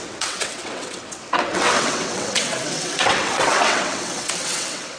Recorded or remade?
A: remade